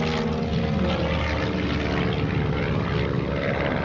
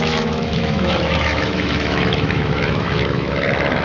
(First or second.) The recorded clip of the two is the first